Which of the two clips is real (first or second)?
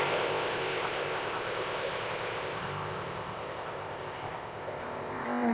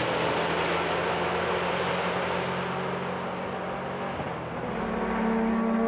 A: second